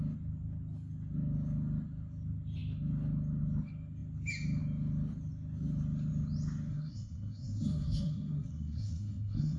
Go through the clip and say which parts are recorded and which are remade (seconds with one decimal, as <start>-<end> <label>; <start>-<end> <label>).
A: 0.0-6.7 recorded; 6.7-9.6 remade

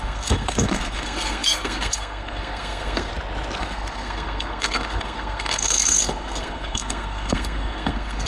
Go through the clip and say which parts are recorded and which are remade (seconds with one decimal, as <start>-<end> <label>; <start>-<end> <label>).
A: 0.0-3.1 remade; 3.1-3.6 recorded; 3.6-8.3 remade